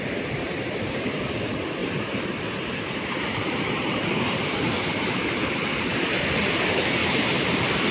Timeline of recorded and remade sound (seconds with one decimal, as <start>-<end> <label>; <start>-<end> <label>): 0.0-0.4 recorded; 0.4-1.2 remade; 1.2-1.8 recorded; 1.8-5.7 remade; 5.7-7.0 recorded; 7.0-7.9 remade